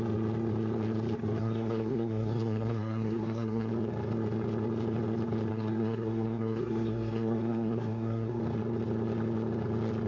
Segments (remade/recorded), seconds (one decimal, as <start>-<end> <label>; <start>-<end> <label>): 0.0-1.4 recorded; 1.4-3.7 remade; 3.7-5.5 recorded; 5.5-8.4 remade; 8.4-10.1 recorded